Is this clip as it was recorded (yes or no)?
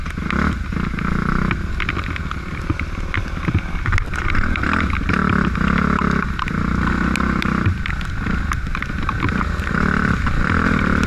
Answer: yes